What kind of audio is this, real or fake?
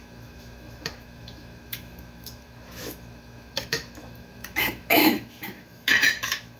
fake